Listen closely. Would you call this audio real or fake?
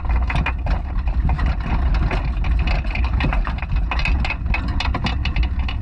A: real